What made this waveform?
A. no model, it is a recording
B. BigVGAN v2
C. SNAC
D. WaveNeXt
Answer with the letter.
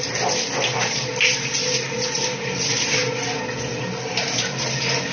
A